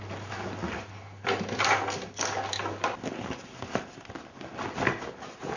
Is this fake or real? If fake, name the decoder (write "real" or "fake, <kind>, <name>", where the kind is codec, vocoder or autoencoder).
real